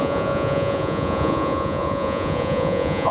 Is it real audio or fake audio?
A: fake